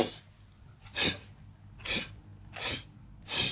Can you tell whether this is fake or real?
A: real